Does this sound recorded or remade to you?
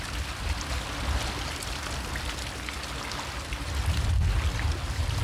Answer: recorded